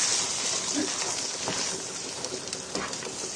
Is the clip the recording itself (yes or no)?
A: yes